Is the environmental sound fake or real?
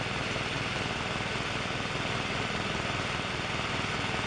real